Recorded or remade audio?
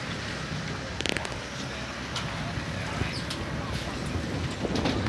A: recorded